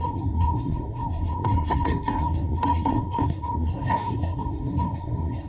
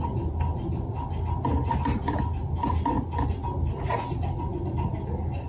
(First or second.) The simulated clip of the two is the first